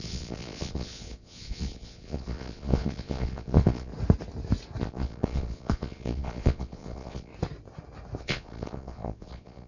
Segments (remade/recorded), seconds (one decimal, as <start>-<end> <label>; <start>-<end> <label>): 0.0-3.9 remade; 3.9-4.8 recorded; 4.8-7.3 remade; 7.3-8.2 recorded; 8.2-9.7 remade